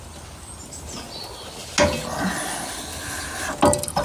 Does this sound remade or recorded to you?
recorded